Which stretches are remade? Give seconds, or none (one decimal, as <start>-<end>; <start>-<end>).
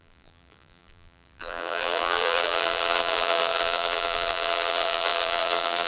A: 0.0-5.9